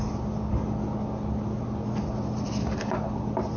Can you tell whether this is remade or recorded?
recorded